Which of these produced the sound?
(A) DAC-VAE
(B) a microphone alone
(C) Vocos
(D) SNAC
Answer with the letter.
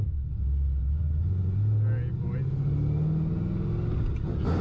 B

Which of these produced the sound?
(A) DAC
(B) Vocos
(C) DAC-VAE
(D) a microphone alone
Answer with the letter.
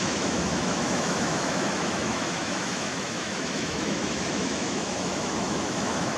C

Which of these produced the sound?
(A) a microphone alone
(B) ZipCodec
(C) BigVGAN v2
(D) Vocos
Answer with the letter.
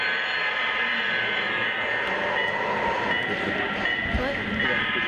A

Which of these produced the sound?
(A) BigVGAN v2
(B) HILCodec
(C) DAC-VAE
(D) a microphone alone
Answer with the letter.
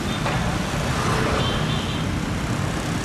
D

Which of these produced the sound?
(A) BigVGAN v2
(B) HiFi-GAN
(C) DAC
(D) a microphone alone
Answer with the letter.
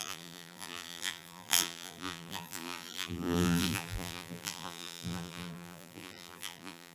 A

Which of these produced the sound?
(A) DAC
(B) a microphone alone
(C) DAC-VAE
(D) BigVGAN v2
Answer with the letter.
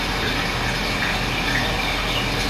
B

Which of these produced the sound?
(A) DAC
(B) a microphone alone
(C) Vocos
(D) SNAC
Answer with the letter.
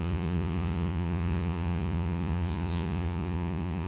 C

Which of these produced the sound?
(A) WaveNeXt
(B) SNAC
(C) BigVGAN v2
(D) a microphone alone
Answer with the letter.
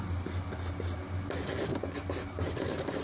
D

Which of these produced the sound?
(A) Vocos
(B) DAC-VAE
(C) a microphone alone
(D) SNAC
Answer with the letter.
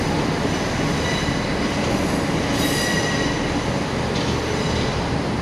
C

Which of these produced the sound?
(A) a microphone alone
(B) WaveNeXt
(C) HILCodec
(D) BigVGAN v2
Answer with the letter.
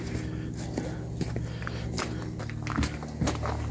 A